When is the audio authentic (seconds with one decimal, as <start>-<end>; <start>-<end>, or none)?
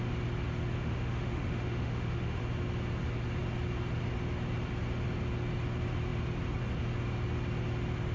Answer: 0.0-0.8; 2.4-8.1